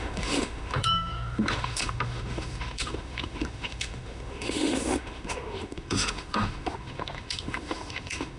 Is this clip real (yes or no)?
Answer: no